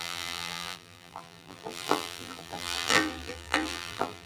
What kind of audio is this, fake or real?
fake